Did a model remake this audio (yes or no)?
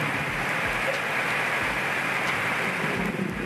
no